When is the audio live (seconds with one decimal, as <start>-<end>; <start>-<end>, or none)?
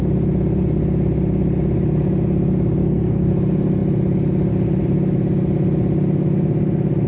0.0-2.8; 3.3-7.1